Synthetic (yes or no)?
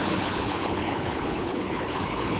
yes